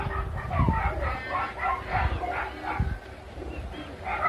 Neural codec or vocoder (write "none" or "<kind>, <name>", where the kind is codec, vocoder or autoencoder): none